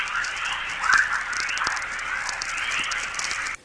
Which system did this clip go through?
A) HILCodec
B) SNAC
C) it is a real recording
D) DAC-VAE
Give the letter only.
C